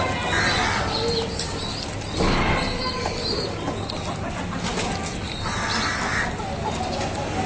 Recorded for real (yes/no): yes